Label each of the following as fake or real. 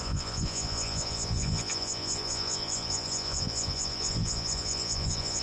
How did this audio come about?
fake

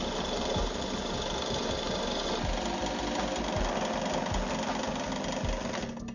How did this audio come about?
real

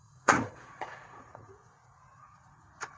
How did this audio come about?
fake